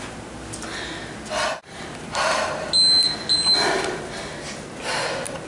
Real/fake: real